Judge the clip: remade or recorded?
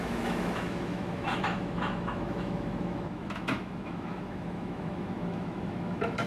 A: remade